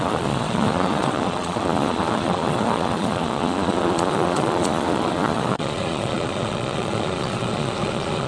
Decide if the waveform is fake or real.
fake